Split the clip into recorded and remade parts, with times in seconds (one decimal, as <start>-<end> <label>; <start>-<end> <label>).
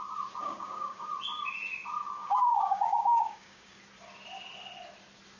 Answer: 0.0-0.4 recorded; 0.4-1.1 remade; 1.1-2.2 recorded; 2.2-3.8 remade; 3.8-5.4 recorded